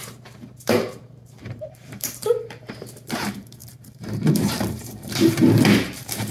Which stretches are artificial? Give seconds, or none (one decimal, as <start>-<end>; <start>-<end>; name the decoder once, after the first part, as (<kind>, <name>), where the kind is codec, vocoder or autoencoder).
0.0-6.3 (vocoder, BigVGAN v2)